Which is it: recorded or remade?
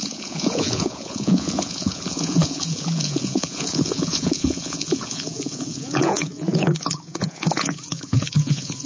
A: remade